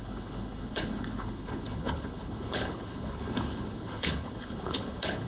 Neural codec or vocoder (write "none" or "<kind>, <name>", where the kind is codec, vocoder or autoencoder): codec, HILCodec